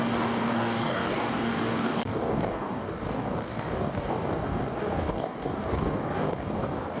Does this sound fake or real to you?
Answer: fake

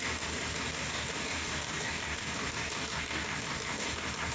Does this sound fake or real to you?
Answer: fake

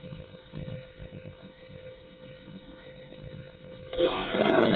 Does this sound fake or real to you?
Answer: fake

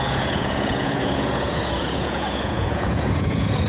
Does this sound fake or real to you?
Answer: fake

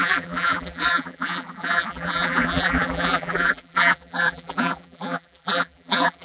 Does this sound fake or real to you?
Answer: fake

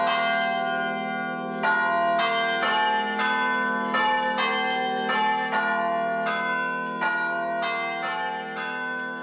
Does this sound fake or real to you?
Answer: real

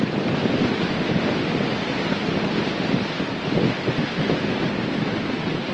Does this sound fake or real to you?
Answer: real